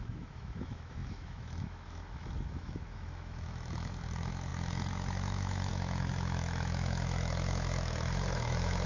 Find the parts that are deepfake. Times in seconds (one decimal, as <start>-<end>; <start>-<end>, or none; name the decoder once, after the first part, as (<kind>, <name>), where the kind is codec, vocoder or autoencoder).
0.0-8.9 (autoencoder, DAC-VAE)